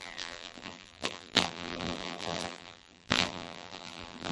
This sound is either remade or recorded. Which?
remade